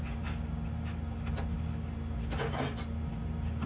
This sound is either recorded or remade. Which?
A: recorded